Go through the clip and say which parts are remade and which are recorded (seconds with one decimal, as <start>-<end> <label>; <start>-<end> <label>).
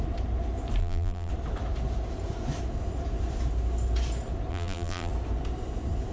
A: 0.0-0.8 recorded; 0.8-1.3 remade; 1.3-4.5 recorded; 4.5-5.1 remade; 5.1-6.1 recorded